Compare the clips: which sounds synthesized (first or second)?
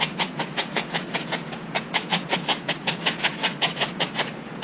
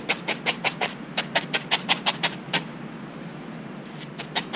first